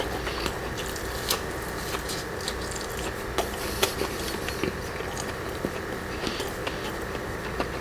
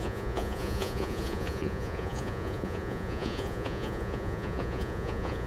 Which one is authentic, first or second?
first